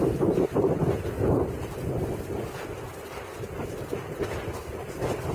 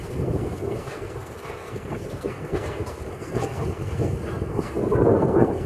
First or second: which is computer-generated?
second